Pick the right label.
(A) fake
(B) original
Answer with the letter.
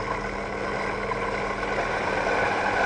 B